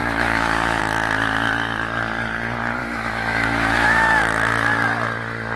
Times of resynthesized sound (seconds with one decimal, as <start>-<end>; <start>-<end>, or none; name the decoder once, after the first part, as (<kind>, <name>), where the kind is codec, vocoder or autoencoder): 0.0-0.8 (autoencoder, DAC-VAE); 2.8-4.2